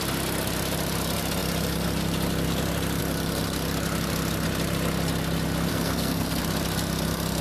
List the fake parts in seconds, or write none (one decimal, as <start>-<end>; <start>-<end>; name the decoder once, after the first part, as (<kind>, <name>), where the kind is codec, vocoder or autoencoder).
5.7-6.4 (codec, SNAC)